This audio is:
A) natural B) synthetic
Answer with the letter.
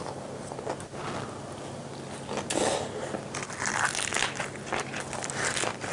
A